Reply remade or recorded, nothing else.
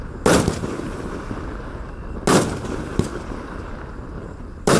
recorded